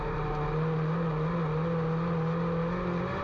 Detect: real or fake real